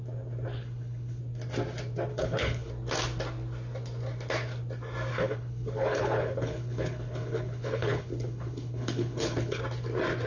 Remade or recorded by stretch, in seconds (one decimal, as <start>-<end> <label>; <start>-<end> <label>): 0.0-0.5 recorded; 0.5-1.2 remade; 1.2-2.1 recorded; 2.1-2.7 remade; 2.7-5.1 recorded; 5.1-9.6 remade; 9.6-10.3 recorded